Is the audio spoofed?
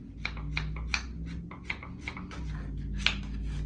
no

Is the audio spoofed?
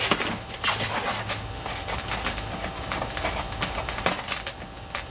no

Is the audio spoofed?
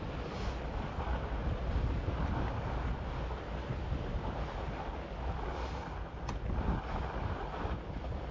no